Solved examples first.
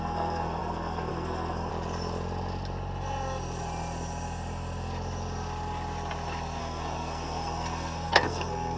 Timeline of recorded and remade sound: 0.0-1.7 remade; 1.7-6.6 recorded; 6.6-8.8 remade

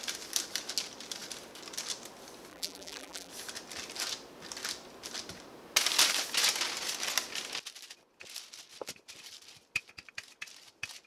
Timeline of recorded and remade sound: 0.0-2.5 recorded; 2.5-3.3 remade; 3.3-11.1 recorded

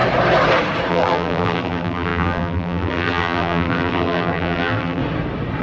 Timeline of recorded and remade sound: 0.0-0.9 recorded; 0.9-5.0 remade; 5.0-5.6 recorded